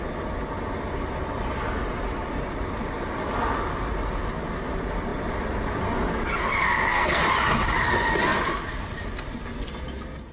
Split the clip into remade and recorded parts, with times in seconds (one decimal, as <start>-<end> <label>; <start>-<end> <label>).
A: 0.0-6.6 recorded; 6.6-7.2 remade; 7.2-10.3 recorded